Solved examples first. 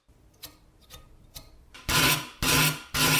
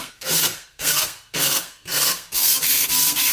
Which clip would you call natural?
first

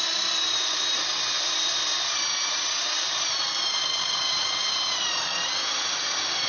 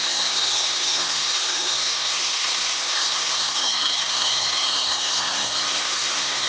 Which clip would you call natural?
first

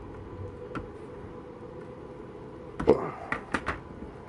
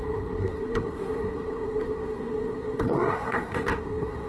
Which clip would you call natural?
first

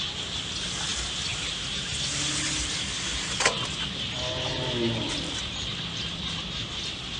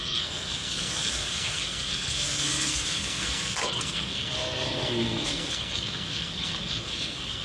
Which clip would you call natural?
first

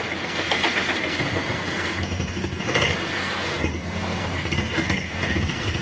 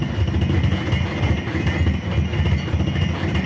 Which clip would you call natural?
second